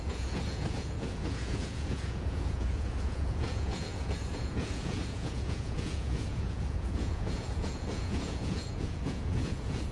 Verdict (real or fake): fake